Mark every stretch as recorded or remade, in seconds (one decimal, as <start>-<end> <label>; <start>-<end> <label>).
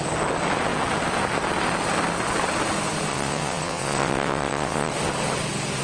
0.0-3.1 recorded; 3.1-4.9 remade; 4.9-5.8 recorded